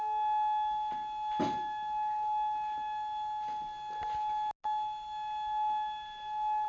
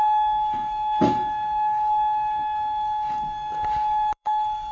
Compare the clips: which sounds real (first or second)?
first